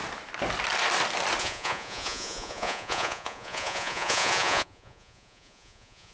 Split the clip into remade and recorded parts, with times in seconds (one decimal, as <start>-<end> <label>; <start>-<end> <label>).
0.0-1.4 recorded; 1.4-6.1 remade